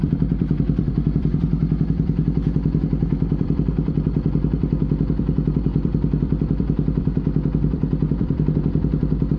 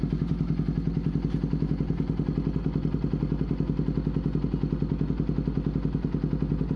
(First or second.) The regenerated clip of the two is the first